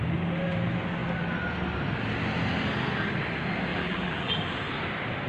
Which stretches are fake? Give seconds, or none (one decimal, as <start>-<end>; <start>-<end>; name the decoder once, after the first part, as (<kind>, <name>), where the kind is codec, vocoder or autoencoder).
3.7-4.4 (vocoder, BigVGAN v2)